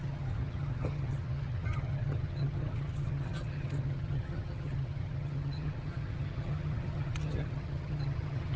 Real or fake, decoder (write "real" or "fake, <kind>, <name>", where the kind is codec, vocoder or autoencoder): fake, vocoder, HiFi-GAN